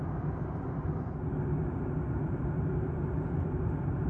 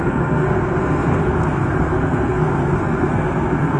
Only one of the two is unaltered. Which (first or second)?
first